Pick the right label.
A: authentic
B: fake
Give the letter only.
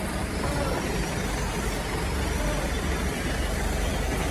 B